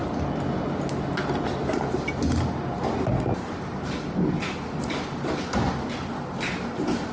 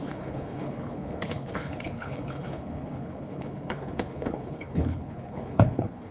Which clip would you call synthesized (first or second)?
second